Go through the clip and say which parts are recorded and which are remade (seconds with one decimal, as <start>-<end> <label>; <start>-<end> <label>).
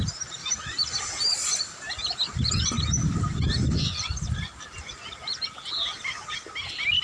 0.0-7.0 remade